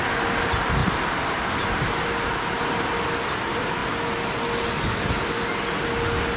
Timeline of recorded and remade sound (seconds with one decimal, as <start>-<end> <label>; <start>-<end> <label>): 0.0-6.4 recorded